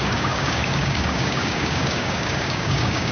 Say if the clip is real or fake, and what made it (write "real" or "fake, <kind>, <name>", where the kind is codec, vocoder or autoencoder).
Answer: fake, codec, DAC